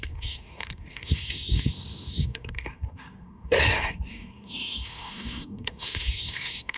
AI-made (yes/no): yes